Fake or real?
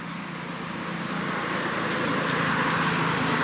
real